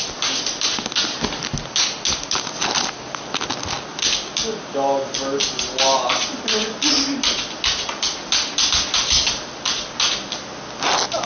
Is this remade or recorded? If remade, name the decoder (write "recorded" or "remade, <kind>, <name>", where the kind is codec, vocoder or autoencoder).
recorded